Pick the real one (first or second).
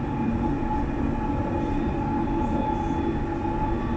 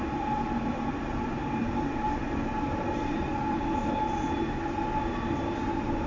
first